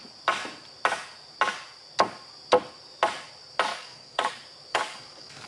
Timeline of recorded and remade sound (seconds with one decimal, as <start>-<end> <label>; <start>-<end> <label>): 0.0-3.7 recorded; 3.7-4.3 remade; 4.3-4.7 recorded; 4.7-5.5 remade